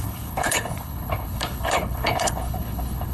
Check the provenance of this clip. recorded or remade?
remade